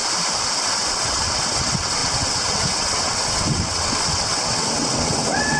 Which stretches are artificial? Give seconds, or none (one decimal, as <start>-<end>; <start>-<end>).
0.6-5.6